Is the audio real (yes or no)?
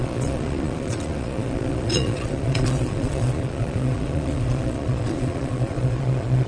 no